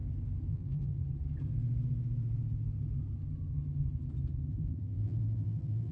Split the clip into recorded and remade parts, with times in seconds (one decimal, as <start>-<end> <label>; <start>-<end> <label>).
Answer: 0.0-0.5 recorded; 0.5-1.0 remade; 1.0-4.5 recorded; 4.5-5.9 remade